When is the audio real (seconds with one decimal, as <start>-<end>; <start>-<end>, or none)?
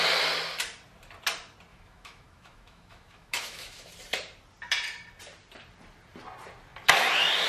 0.0-1.7; 3.9-7.5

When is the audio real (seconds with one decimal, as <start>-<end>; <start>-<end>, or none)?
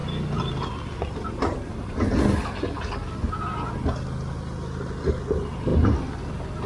0.0-6.7